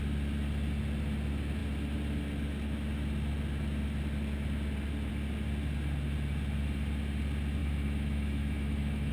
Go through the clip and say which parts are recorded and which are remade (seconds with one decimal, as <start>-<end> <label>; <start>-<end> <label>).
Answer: 0.0-7.6 recorded; 7.6-9.1 remade